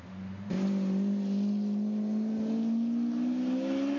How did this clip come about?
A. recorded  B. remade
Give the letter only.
A